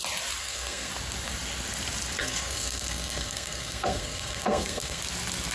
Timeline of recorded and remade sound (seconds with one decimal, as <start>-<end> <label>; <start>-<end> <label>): 0.0-0.4 recorded; 0.4-0.9 remade; 0.9-2.2 recorded; 2.2-5.0 remade; 5.0-5.5 recorded